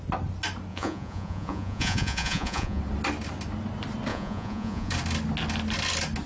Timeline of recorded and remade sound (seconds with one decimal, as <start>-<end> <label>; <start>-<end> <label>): 0.0-0.7 recorded; 0.7-2.8 remade; 2.8-4.1 recorded; 4.1-4.9 remade; 4.9-6.3 recorded